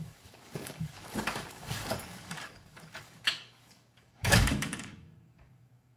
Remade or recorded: remade